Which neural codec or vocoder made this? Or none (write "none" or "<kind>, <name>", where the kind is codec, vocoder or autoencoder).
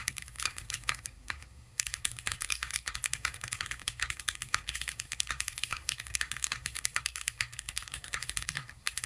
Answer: codec, SNAC